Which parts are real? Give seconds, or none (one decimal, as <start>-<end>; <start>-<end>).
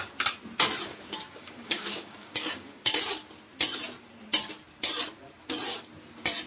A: 0.0-0.9; 3.0-6.5